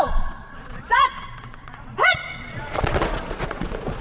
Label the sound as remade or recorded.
remade